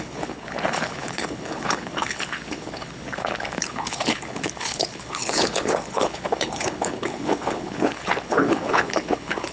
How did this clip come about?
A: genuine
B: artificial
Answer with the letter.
B